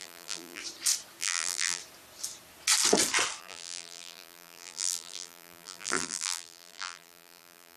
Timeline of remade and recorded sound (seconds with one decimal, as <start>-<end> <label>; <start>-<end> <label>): 0.0-0.6 remade; 0.6-1.2 recorded; 1.2-1.8 remade; 1.8-3.4 recorded; 3.4-7.8 remade